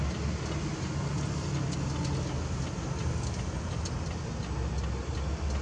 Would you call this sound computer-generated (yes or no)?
no